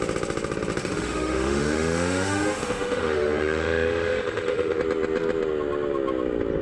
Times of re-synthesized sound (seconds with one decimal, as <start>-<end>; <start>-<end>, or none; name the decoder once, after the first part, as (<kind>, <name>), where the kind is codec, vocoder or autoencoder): 0.8-4.8 (autoencoder, DAC-VAE)